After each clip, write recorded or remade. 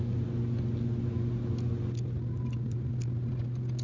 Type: recorded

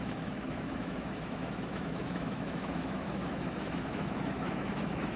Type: remade